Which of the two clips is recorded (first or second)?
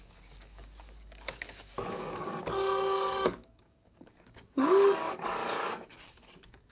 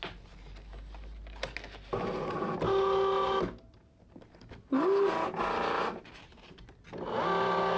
second